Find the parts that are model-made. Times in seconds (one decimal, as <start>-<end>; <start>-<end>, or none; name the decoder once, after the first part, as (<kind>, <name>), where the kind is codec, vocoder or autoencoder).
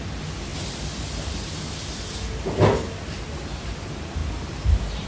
0.5-1.7 (vocoder, BigVGAN v2)